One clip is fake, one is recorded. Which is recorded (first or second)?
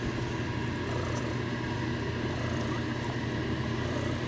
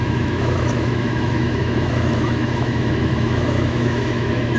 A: first